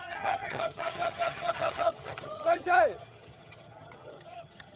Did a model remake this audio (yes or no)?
yes